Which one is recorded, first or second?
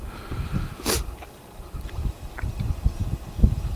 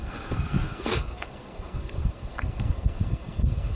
first